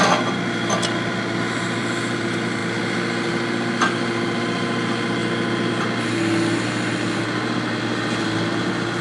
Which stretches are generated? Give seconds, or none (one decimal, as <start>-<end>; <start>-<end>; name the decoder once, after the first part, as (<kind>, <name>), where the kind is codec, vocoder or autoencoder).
none